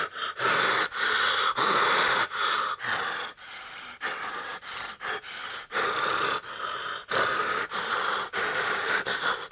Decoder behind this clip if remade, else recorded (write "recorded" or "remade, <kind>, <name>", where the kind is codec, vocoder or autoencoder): recorded